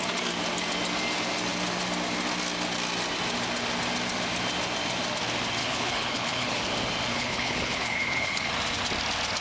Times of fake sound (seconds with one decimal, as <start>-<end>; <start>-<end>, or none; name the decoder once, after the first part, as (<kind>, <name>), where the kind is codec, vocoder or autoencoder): 5.6-6.6 (codec, HILCodec); 7.1-8.5